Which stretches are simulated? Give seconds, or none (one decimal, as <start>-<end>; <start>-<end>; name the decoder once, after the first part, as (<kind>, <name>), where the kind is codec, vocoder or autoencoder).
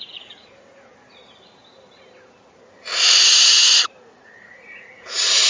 0.0-0.9 (vocoder, Vocos); 4.2-5.5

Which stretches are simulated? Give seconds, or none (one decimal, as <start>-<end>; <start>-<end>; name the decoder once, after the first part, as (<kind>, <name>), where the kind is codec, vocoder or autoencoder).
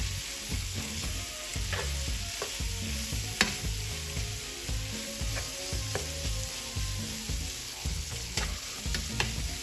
0.5-1.1 (codec, HILCodec); 7.6-8.8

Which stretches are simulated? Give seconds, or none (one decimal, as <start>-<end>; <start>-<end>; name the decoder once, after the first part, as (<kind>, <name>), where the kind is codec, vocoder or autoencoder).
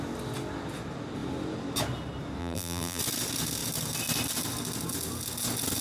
2.4-3.0 (vocoder, BigVGAN v2)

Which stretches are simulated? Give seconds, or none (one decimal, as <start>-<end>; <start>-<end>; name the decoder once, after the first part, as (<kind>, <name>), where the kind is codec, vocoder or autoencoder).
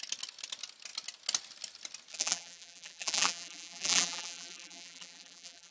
2.1-5.7 (vocoder, BigVGAN v2)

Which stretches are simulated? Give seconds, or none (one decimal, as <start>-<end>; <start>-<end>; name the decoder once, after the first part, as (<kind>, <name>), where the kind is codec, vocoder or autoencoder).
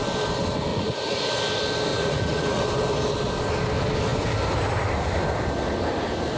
0.7-1.2 (vocoder, Vocos); 1.9-2.6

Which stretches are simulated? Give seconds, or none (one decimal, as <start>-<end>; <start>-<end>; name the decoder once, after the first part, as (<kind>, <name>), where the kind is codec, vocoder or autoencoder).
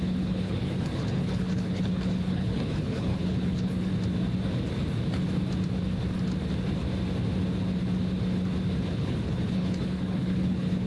0.0-3.9 (codec, HILCodec); 8.9-10.9